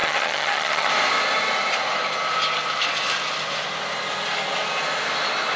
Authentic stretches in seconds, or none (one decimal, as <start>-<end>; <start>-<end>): 0.9-5.6